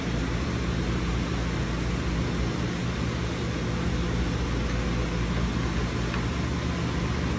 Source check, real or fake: real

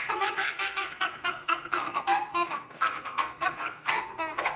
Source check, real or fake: fake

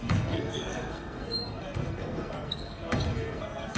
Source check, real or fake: fake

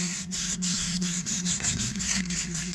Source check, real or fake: fake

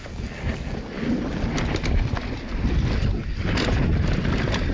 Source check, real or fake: real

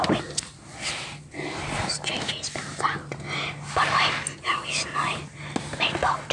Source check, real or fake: real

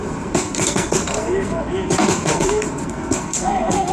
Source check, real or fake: fake